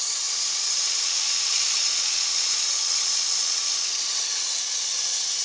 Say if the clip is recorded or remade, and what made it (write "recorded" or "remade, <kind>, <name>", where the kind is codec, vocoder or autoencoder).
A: remade, vocoder, WaveNeXt